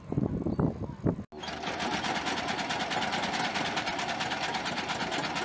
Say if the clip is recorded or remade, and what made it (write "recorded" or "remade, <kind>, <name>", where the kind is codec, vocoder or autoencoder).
recorded